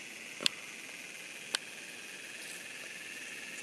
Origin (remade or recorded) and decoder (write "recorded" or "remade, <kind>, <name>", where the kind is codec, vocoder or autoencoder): recorded